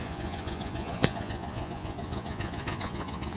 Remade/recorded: remade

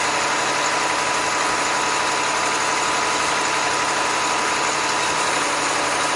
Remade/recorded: recorded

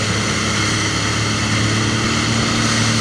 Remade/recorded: recorded